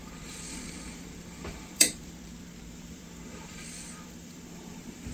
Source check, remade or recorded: remade